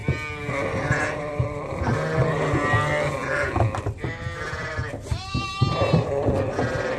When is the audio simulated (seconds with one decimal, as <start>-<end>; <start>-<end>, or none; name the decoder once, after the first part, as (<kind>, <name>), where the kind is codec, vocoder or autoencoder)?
none